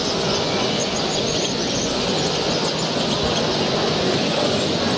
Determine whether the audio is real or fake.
fake